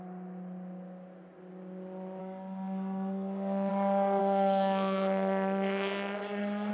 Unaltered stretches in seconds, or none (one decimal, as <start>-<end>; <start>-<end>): 0.0-2.2; 3.7-4.2